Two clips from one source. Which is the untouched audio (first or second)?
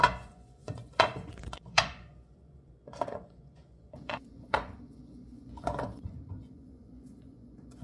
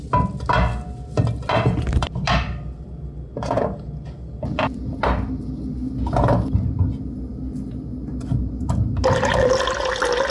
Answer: second